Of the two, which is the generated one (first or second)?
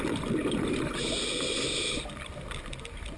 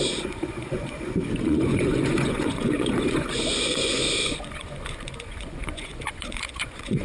second